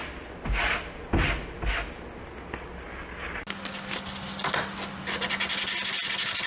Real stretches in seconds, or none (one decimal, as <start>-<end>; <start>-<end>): 0.0-6.5